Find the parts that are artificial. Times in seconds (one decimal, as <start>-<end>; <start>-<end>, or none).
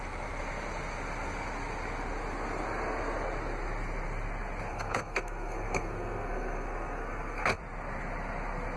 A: 4.7-7.6